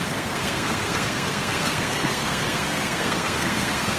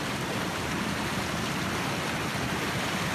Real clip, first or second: second